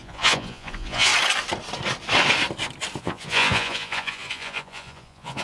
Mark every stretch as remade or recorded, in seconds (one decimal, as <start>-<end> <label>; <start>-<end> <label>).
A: 0.0-1.1 remade; 1.1-3.0 recorded; 3.0-5.4 remade